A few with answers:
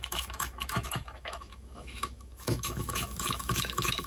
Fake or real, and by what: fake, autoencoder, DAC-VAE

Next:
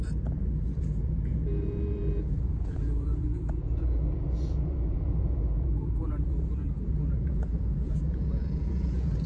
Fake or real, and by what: fake, vocoder, Vocos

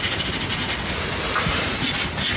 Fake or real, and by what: real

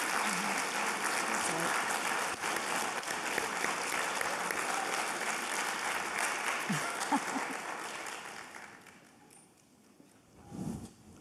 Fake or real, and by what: real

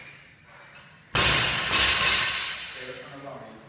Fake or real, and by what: real